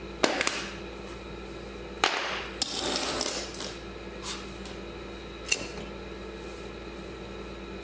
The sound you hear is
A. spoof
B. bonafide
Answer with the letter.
B